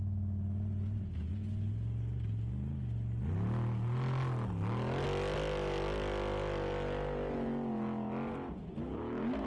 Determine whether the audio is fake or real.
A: real